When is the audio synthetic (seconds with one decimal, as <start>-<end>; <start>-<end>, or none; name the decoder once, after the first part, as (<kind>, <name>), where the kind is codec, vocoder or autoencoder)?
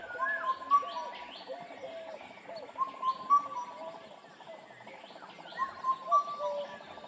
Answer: none